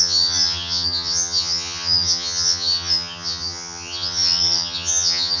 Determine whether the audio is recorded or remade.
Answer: remade